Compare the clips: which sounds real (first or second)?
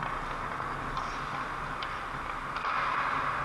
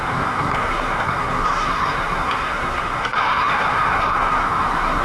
first